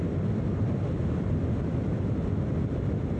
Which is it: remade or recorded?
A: recorded